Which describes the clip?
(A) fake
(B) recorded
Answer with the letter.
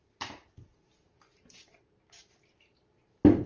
B